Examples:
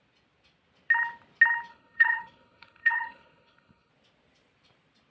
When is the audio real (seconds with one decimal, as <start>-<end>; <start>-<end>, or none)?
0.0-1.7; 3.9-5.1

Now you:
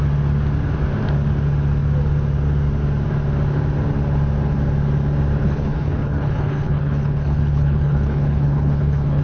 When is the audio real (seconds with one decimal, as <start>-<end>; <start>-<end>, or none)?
0.0-5.4

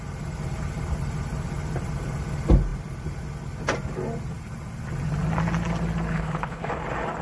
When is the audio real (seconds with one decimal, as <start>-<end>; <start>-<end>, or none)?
0.0-6.1; 6.8-7.2

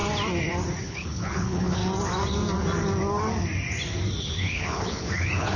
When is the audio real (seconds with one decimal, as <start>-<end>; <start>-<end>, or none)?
0.0-0.8; 1.8-4.2

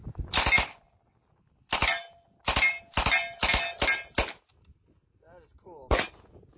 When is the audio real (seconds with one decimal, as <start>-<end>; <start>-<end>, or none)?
0.0-6.6

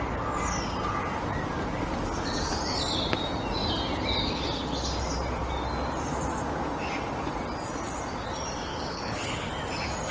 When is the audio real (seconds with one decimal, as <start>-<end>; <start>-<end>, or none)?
0.0-8.7; 9.5-10.1

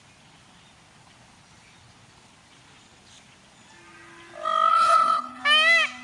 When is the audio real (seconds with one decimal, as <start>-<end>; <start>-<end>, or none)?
0.0-4.7; 5.4-6.0

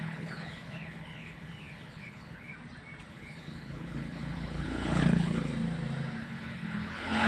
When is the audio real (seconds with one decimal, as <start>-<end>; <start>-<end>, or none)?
2.5-3.1; 5.5-6.2